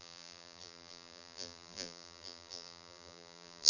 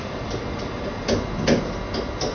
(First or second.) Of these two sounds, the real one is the second